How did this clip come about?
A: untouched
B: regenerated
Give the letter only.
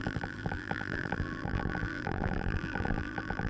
B